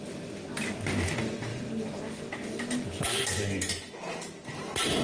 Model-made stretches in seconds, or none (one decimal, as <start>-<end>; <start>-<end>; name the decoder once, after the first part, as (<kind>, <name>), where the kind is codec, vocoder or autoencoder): none

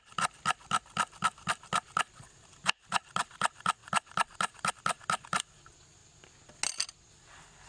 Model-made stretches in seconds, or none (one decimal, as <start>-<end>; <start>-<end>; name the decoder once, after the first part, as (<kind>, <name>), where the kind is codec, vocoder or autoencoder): none

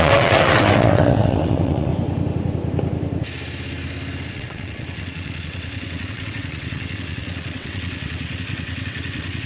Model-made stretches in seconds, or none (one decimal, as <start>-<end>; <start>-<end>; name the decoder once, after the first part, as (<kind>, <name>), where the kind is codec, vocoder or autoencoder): 0.0-1.9 (vocoder, WaveNeXt); 4.3-9.5

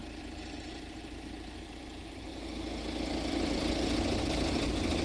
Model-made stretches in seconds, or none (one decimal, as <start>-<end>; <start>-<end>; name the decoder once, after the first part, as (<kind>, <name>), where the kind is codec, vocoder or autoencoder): none